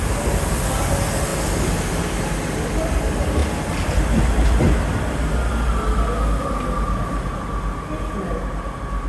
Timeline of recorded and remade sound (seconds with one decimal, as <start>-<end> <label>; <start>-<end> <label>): 0.0-9.1 recorded